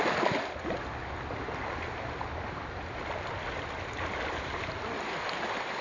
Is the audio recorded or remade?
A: recorded